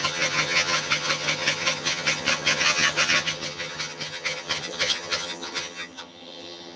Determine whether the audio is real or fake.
fake